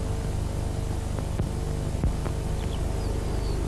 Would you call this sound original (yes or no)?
yes